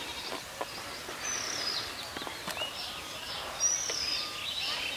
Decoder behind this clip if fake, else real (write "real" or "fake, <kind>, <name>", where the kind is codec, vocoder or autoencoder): real